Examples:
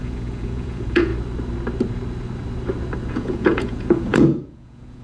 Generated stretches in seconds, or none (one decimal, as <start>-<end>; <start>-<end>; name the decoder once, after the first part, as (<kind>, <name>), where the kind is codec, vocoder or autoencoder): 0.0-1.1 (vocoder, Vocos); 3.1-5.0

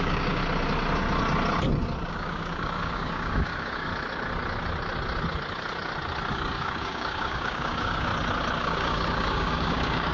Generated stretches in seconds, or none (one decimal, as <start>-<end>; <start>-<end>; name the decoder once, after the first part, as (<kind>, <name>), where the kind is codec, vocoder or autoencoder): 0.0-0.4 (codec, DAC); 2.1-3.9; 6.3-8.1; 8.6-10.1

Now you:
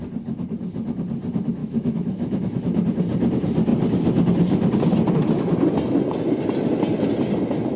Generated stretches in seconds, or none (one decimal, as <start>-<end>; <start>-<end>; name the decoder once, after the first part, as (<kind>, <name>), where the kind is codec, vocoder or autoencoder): 1.6-2.6 (autoencoder, DAC-VAE)

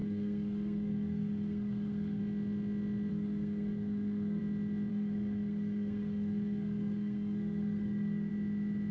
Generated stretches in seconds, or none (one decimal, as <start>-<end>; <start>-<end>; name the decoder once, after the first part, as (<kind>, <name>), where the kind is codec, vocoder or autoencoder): 0.0-2.2 (codec, SNAC); 3.1-4.4; 4.9-8.3